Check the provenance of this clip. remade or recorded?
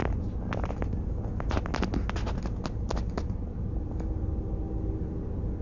recorded